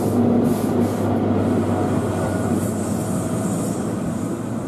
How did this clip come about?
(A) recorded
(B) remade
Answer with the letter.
A